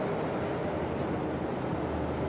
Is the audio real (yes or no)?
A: yes